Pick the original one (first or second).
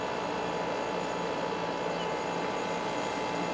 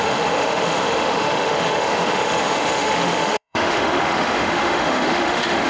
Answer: first